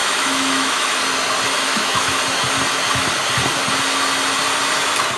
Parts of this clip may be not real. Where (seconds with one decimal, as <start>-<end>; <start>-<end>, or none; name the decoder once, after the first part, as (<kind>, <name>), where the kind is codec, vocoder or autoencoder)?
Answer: 0.0-1.0 (autoencoder, DAC-VAE); 1.7-2.2